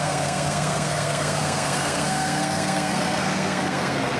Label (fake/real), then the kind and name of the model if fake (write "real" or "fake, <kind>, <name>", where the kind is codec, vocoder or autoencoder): fake, codec, SNAC